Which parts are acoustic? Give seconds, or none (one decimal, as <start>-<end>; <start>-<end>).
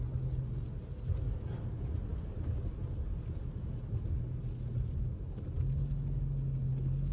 0.0-7.1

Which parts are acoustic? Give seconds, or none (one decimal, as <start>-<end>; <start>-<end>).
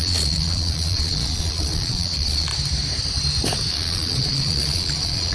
2.5-3.7